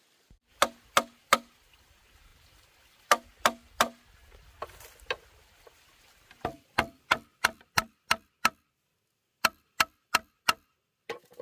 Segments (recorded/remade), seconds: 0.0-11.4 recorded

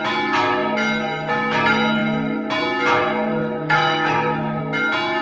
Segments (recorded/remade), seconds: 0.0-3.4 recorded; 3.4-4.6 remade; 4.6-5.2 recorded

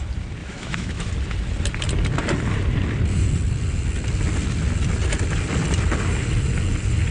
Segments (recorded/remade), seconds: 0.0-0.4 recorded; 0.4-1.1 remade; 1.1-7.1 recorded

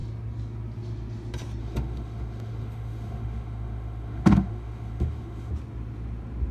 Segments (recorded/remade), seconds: 0.0-1.6 recorded; 1.6-5.5 remade; 5.5-6.5 recorded